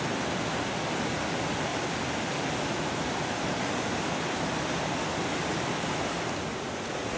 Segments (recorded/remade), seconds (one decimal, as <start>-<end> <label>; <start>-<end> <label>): 0.0-6.5 recorded; 6.5-7.2 remade